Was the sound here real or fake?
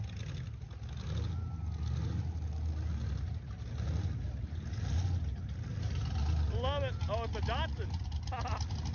real